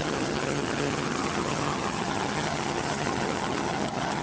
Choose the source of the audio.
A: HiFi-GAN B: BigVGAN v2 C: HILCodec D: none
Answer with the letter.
A